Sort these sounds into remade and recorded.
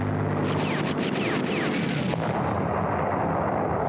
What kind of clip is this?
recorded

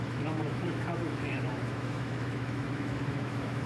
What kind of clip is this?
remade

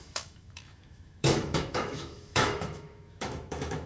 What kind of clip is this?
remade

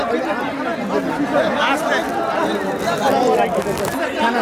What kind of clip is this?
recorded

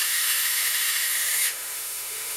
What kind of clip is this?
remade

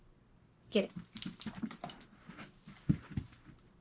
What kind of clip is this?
recorded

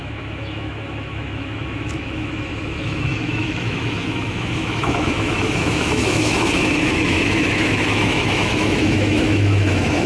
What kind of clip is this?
remade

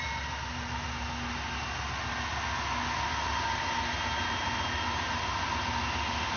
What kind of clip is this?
recorded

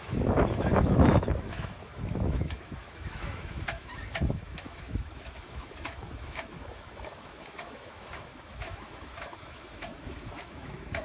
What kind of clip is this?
remade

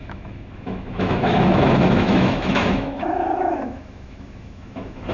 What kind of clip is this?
remade